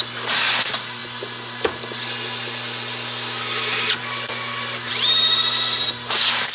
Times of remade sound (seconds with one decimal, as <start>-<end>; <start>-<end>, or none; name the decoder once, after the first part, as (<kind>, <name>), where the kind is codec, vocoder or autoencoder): none